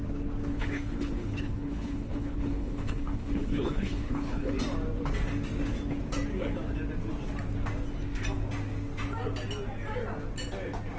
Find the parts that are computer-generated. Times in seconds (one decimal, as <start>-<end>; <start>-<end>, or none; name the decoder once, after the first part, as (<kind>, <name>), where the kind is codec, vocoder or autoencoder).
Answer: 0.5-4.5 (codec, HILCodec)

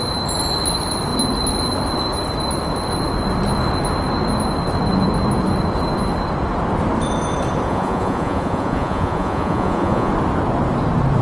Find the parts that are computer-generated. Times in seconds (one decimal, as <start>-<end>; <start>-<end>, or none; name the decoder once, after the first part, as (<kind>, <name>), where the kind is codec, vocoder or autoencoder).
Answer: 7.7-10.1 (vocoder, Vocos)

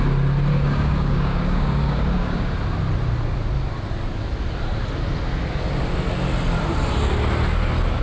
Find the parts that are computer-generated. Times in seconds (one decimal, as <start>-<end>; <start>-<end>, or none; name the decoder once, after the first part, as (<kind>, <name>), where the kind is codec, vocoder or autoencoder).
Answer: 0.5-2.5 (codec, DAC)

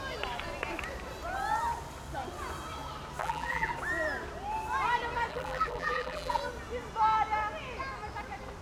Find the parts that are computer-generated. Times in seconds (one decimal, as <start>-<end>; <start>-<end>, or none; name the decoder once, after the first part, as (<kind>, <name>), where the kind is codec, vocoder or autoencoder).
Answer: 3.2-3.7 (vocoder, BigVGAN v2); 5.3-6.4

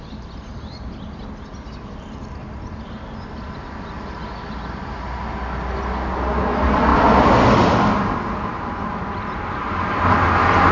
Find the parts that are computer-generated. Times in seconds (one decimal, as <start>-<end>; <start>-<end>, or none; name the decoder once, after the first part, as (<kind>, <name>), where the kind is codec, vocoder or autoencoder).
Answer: none

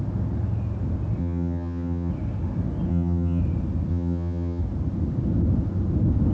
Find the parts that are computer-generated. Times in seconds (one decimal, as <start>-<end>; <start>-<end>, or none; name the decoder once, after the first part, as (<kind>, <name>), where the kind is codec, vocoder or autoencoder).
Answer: 1.2-2.1 (vocoder, HiFi-GAN); 2.9-3.4; 3.9-4.6